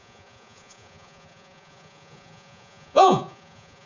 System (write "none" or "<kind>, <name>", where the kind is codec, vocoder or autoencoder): vocoder, Vocos